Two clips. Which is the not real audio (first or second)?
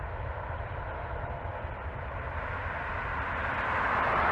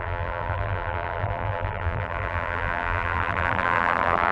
second